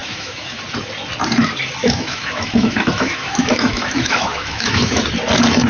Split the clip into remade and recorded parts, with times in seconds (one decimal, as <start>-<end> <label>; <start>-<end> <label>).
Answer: 0.0-0.6 remade; 0.6-1.8 recorded; 1.8-5.0 remade; 5.0-5.7 recorded